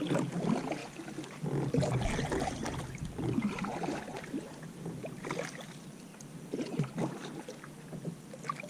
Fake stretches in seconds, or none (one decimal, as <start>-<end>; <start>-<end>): none